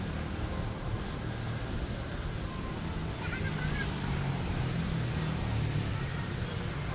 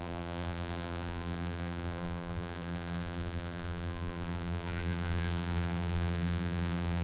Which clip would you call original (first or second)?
first